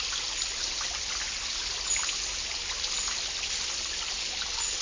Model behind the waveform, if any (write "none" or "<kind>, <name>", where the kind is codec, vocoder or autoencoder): none